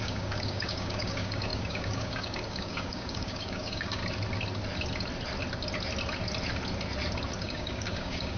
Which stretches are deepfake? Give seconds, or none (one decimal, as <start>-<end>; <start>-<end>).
0.0-4.0; 7.4-8.4